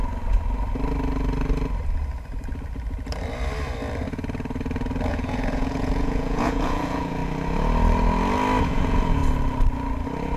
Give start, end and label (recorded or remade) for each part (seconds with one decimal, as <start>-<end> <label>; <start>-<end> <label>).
0.0-5.1 recorded; 5.1-7.2 remade; 7.2-8.6 recorded; 8.6-9.2 remade; 9.2-10.4 recorded